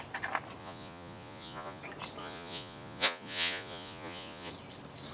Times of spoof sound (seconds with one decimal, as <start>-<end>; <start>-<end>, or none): 0.6-1.8; 2.2-4.5